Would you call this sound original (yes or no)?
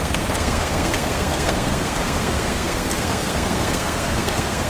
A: no